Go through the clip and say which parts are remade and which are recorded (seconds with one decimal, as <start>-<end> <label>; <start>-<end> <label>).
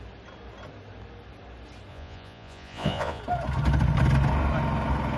0.0-1.9 recorded; 1.9-3.2 remade; 3.2-5.2 recorded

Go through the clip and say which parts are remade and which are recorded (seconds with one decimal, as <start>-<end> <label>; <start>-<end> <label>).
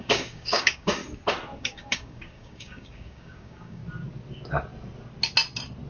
0.0-1.0 remade; 1.0-1.6 recorded; 1.6-3.8 remade; 3.8-5.9 recorded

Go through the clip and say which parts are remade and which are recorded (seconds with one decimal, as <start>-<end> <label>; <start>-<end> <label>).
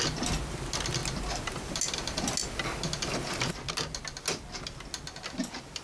0.0-5.8 recorded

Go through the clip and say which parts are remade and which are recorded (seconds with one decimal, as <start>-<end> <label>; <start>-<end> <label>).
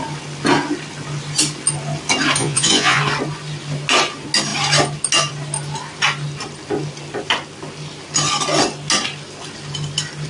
0.0-2.4 recorded; 2.4-3.0 remade; 3.0-10.3 recorded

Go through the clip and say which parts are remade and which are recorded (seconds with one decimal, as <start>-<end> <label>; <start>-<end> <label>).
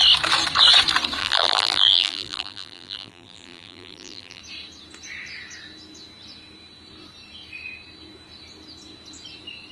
0.0-1.2 recorded; 1.2-4.4 remade; 4.4-9.7 recorded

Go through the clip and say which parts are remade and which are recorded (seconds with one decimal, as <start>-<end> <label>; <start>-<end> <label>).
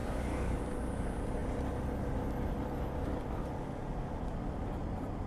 0.0-0.6 remade; 0.6-5.3 recorded